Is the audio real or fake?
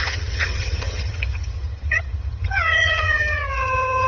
fake